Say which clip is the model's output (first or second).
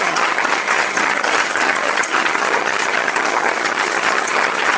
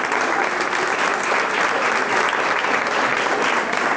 first